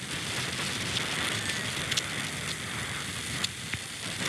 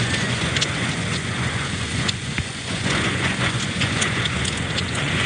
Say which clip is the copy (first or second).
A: second